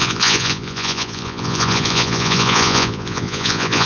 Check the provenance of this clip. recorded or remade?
remade